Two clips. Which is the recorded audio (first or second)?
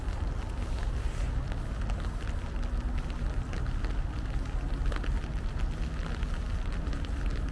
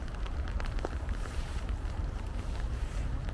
first